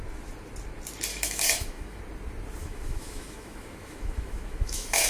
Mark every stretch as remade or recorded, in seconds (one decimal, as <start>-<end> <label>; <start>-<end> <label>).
0.0-1.1 recorded; 1.1-2.0 remade; 2.0-2.6 recorded; 2.6-5.1 remade